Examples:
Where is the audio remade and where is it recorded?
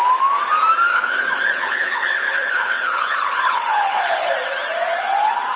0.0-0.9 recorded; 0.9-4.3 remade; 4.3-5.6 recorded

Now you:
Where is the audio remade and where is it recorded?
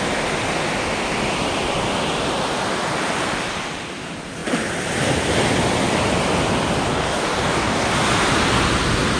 0.0-6.9 recorded; 6.9-7.9 remade; 7.9-9.2 recorded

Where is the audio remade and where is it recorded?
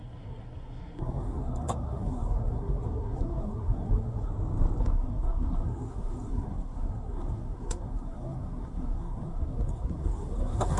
0.0-4.3 remade; 4.3-4.8 recorded; 4.8-10.8 remade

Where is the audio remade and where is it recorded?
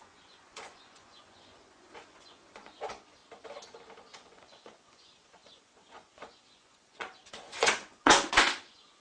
0.0-3.2 remade; 3.2-4.1 recorded; 4.1-9.0 remade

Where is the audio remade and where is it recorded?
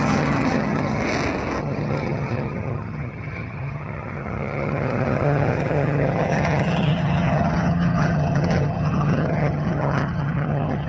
0.0-1.0 remade; 1.0-1.6 recorded; 1.6-10.9 remade